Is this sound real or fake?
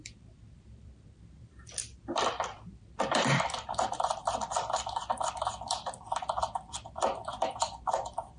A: fake